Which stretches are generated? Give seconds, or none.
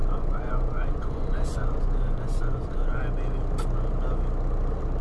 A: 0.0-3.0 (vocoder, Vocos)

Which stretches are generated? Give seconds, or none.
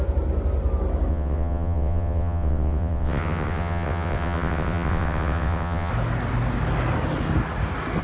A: 1.1-5.9 (vocoder, WaveNeXt)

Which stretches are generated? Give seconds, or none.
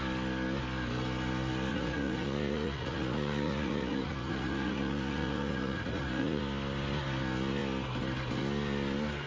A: 1.7-6.4 (vocoder, Vocos)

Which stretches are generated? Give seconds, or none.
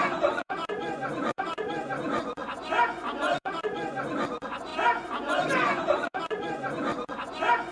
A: 0.0-7.7 (vocoder, Vocos)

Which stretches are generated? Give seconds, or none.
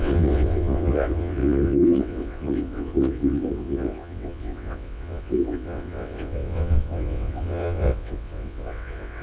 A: 0.0-9.2 (vocoder, WaveNeXt)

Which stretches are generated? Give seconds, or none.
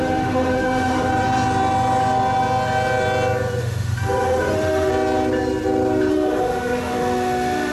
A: 0.0-1.1 (autoencoder, DAC-VAE); 3.6-4.9; 6.1-7.7